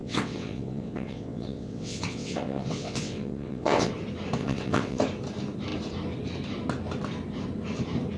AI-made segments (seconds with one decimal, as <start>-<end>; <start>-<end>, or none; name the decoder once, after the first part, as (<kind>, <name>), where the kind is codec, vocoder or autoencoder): 0.0-3.9 (vocoder, WaveNeXt); 4.4-5.0